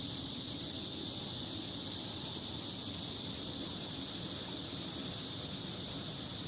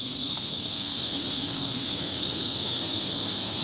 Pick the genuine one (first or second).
first